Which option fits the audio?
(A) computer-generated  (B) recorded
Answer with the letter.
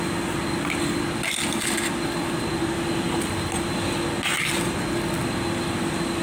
B